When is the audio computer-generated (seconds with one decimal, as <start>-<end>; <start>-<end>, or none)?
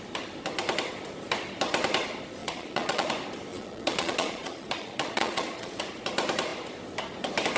2.4-3.1; 3.5-5.8